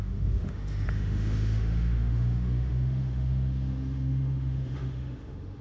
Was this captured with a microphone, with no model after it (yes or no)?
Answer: no